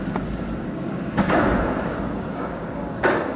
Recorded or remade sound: remade